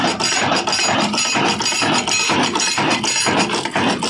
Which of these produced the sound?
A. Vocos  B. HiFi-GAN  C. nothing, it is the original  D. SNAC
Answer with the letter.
C